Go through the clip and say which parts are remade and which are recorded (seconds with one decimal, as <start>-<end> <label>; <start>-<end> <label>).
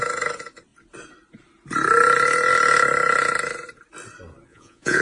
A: 0.0-4.5 recorded; 4.5-5.0 remade